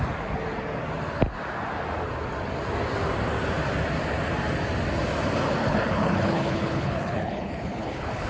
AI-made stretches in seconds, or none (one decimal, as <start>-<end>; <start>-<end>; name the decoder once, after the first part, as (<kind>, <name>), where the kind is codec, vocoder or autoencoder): 5.6-8.3 (codec, HILCodec)